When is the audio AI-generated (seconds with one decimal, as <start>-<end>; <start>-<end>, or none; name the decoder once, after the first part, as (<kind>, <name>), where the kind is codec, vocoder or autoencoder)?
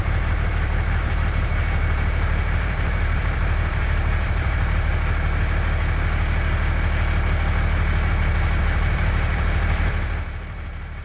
0.0-4.9 (vocoder, BigVGAN v2); 8.6-11.0